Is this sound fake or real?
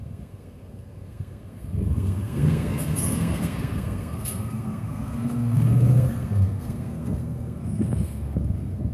fake